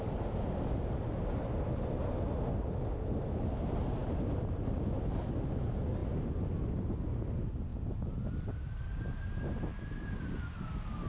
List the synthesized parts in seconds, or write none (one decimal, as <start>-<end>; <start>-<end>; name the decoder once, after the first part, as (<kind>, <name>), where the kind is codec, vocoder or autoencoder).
none